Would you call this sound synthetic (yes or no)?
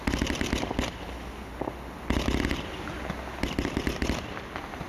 no